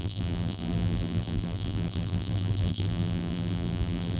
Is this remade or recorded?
remade